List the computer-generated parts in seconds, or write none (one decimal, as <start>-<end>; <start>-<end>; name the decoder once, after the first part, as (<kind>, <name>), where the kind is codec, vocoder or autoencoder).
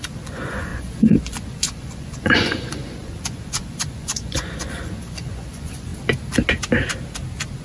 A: 0.0-5.9 (vocoder, Vocos)